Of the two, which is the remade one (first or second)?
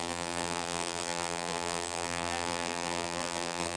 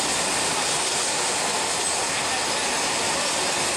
first